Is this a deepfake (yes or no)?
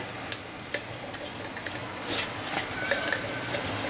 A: no